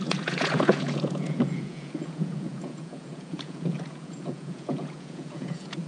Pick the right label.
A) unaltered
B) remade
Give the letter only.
B